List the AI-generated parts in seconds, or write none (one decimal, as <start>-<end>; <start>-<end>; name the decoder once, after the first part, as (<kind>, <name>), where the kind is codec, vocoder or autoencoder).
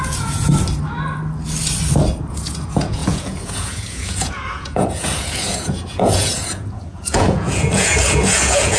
0.0-0.5 (vocoder, Vocos); 2.3-8.8